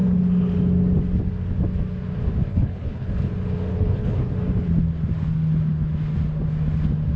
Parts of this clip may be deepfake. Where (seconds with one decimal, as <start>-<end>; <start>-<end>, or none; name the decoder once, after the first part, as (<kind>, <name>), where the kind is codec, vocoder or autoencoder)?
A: 2.5-3.1 (codec, HILCodec); 3.7-4.3